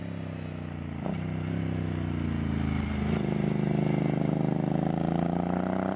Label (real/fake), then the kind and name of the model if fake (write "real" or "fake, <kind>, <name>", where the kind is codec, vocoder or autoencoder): real